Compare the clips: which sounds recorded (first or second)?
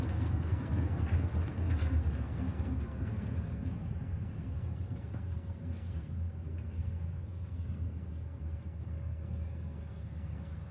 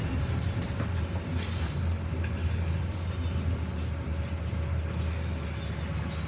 second